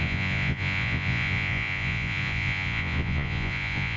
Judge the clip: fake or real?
fake